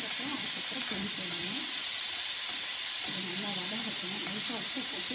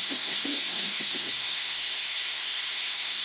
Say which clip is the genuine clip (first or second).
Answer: first